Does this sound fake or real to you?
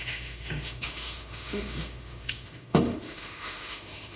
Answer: fake